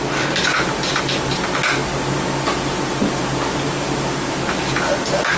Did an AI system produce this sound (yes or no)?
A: no